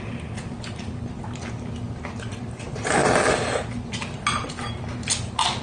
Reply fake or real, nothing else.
real